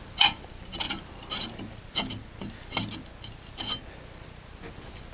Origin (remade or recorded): recorded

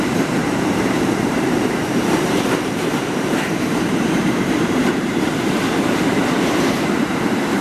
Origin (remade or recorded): remade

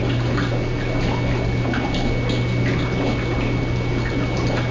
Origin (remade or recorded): recorded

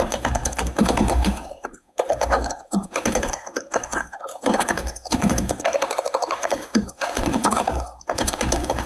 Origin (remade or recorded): remade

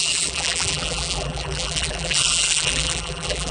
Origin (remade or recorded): remade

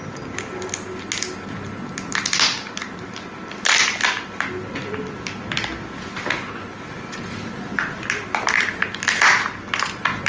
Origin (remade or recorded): recorded